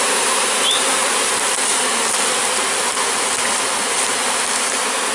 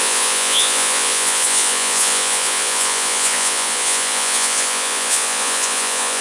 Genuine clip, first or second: first